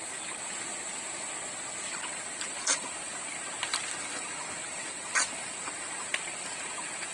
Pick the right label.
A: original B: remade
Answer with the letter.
A